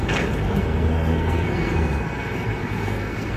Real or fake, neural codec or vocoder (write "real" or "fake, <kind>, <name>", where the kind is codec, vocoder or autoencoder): fake, codec, SNAC